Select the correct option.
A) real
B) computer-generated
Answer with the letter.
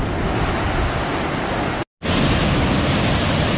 A